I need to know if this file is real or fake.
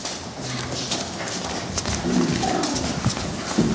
real